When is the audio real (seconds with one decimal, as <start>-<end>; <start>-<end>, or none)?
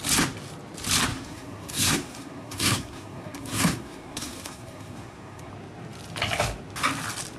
0.0-1.1; 5.5-7.4